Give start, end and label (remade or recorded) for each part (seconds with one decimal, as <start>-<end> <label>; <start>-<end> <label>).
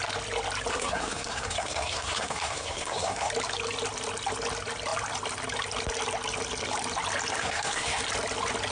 0.0-0.7 recorded; 0.7-3.3 remade; 3.3-7.4 recorded; 7.4-8.0 remade; 8.0-8.7 recorded